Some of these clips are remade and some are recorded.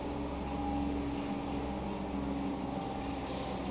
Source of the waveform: recorded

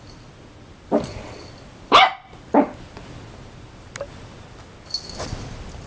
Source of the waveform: recorded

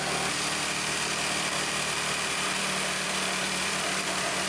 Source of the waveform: remade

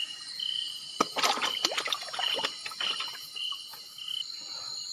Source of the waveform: recorded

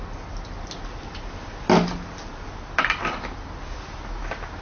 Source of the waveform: recorded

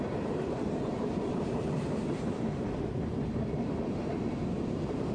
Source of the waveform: remade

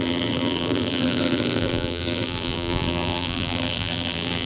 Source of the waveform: remade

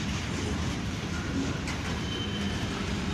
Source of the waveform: remade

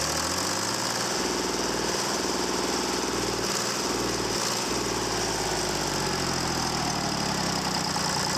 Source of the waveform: recorded